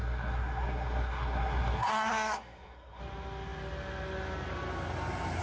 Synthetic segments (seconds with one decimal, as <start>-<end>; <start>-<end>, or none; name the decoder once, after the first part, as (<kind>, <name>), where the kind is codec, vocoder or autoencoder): 0.0-3.0 (codec, SNAC)